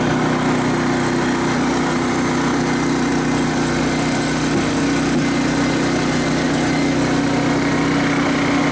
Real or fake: real